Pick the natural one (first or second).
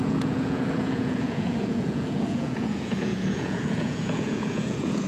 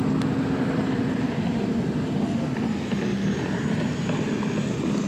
second